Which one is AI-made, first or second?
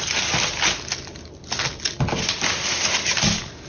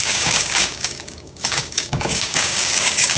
second